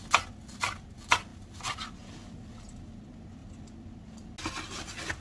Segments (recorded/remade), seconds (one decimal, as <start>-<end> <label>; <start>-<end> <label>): 0.0-5.2 recorded